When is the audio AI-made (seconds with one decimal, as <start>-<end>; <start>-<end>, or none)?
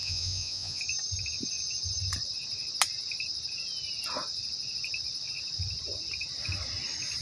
0.0-0.8